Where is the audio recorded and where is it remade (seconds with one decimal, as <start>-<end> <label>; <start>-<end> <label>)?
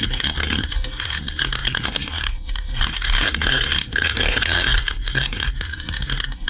0.0-6.5 remade